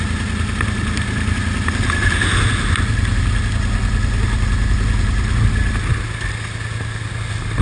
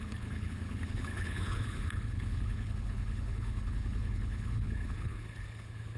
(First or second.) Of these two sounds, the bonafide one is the first